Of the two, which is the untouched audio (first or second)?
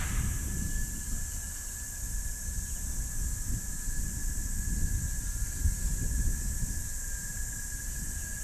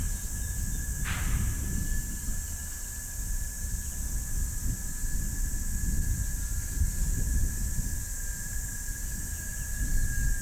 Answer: second